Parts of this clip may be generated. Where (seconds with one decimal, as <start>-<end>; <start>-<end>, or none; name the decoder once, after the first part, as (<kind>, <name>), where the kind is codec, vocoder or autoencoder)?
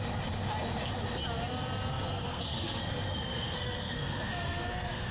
1.9-5.1 (codec, SNAC)